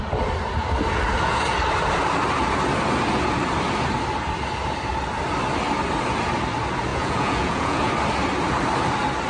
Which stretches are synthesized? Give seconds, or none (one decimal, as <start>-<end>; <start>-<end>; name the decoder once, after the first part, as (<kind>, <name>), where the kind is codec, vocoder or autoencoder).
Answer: 6.9-7.9 (vocoder, Vocos)